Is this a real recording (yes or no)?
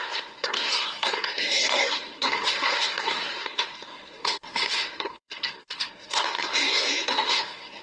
no